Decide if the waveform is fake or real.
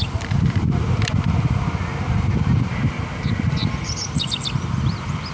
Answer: real